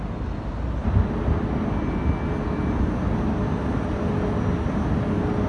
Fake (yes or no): no